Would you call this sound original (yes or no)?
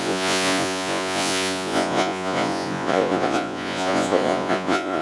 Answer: no